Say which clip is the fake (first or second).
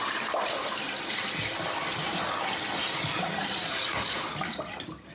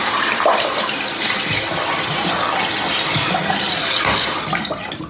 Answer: first